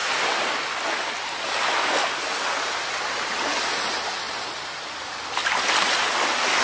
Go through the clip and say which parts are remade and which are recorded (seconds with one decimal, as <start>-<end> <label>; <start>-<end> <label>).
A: 0.0-6.6 recorded